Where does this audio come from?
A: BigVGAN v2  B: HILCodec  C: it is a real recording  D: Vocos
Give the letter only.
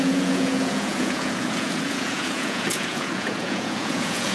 D